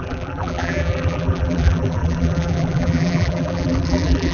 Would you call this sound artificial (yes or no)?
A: yes